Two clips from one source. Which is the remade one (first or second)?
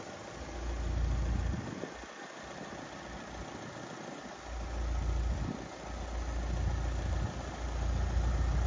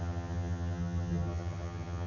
second